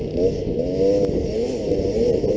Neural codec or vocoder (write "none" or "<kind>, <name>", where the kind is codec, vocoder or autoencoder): none